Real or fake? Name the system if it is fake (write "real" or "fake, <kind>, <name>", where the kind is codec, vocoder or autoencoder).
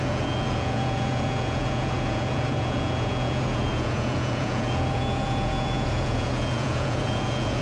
fake, vocoder, Vocos